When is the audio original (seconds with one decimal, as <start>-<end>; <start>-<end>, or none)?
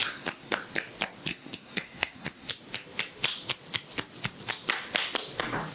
0.6-1.3; 2.5-5.7